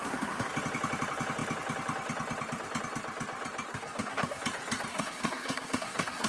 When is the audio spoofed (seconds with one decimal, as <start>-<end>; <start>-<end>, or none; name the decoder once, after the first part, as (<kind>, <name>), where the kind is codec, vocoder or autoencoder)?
0.0-0.5 (codec, SNAC); 3.7-4.4; 4.9-6.3